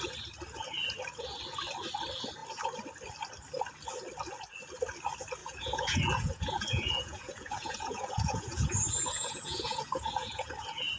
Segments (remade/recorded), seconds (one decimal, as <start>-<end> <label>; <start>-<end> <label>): 0.0-5.4 recorded; 5.4-10.5 remade; 10.5-11.0 recorded